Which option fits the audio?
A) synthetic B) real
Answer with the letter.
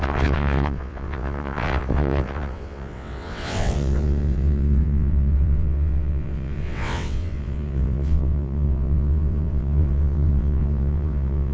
A